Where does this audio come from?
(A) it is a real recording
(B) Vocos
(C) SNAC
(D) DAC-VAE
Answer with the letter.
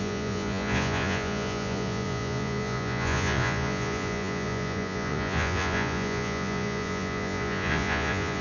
B